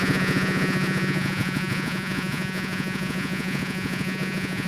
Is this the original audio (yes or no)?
no